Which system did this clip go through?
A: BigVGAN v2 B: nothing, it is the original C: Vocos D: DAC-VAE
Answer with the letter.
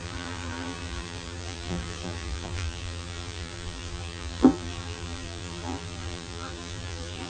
A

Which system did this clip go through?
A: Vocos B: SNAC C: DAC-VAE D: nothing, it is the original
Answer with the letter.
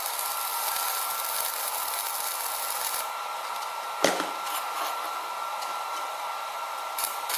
D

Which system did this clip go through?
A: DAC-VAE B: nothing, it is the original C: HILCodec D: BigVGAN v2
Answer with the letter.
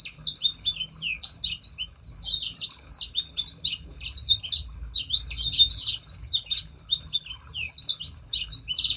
B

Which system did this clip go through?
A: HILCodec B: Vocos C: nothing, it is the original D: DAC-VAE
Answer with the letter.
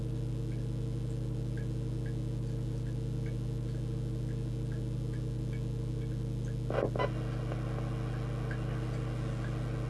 C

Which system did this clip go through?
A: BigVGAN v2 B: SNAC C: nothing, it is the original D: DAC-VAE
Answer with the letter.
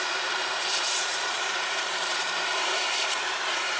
A